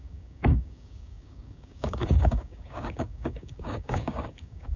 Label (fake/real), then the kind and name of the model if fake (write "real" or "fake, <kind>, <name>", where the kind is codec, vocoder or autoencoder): fake, codec, DAC